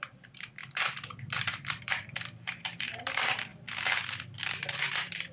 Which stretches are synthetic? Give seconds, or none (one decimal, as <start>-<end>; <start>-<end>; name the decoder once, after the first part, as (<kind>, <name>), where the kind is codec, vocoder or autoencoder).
0.0-0.6 (vocoder, BigVGAN v2); 1.2-3.5; 4.2-5.3